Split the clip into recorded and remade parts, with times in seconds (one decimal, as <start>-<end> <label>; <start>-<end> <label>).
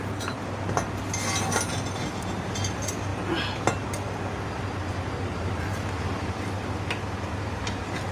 0.0-8.1 recorded